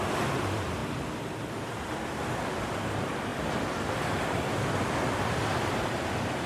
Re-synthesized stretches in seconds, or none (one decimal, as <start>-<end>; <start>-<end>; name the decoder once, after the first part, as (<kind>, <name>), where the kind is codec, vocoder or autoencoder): none